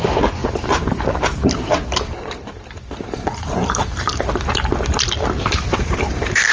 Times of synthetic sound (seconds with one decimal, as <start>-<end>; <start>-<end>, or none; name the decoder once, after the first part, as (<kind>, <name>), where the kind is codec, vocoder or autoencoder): 0.4-4.3 (vocoder, BigVGAN v2); 5.7-6.5